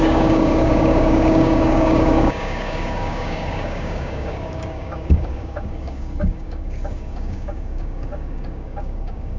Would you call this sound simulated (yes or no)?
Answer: yes